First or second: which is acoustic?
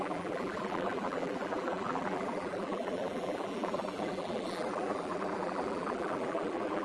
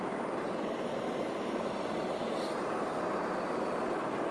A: second